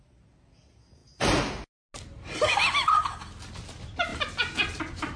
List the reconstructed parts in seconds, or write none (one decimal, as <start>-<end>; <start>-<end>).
none

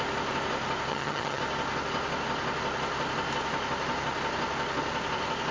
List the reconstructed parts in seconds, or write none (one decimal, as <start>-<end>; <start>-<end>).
0.9-1.4

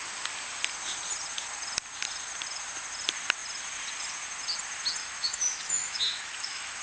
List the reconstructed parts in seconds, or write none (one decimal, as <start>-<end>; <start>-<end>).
5.0-6.8

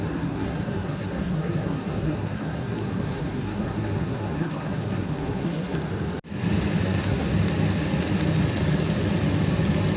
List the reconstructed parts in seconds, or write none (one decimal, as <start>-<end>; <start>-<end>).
0.0-5.8; 6.8-7.3

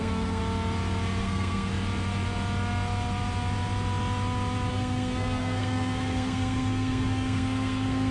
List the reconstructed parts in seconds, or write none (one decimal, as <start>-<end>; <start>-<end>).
0.0-0.4; 1.2-1.7; 4.7-8.1

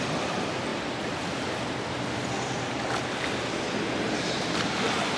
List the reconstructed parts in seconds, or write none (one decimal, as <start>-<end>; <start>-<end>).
none

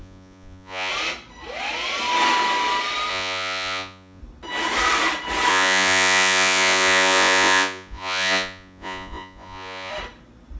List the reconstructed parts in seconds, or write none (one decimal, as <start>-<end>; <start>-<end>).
0.0-0.9; 3.1-4.2; 5.5-9.9